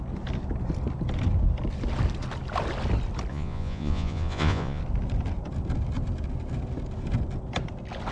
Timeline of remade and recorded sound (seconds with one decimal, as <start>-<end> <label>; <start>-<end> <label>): 0.0-3.3 recorded; 3.3-4.8 remade; 4.8-8.1 recorded